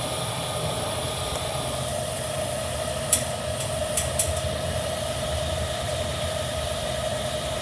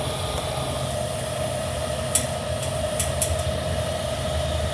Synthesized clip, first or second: first